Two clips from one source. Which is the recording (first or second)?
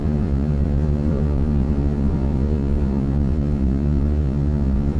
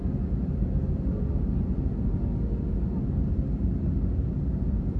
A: second